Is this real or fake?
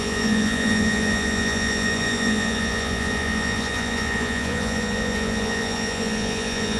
fake